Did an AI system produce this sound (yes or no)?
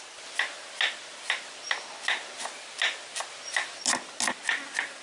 no